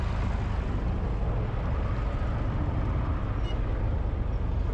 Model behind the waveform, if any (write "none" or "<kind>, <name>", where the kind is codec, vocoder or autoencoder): none